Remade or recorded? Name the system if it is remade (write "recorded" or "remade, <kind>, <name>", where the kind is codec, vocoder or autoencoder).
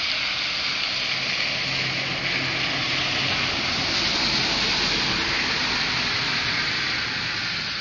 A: recorded